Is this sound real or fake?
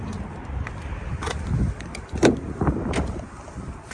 fake